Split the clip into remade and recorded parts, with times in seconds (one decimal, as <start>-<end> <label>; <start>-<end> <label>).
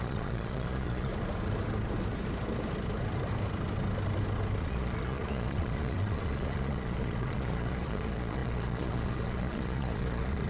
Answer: 0.0-1.1 remade; 1.1-4.6 recorded; 4.6-10.5 remade